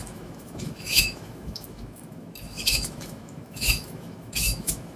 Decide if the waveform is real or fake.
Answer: fake